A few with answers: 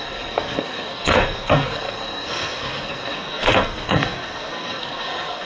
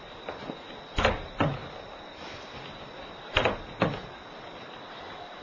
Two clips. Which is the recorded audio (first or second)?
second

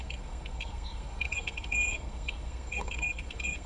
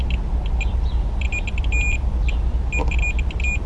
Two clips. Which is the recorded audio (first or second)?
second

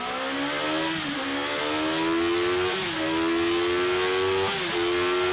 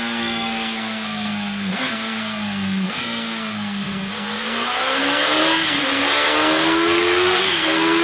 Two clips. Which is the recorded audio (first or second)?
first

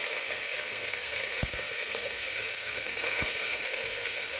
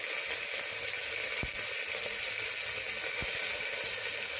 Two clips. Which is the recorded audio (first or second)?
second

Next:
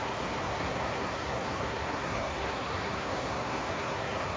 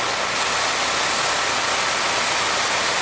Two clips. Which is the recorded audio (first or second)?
second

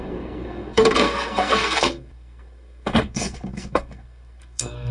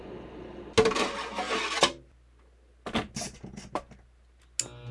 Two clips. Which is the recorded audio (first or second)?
second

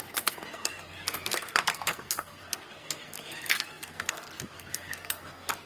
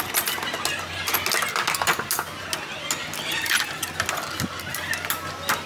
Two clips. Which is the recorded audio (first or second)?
second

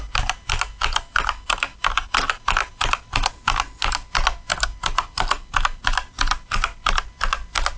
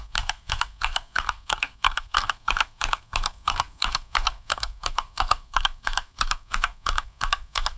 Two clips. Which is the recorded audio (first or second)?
first